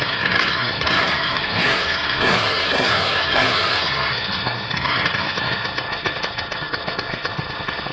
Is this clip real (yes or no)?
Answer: no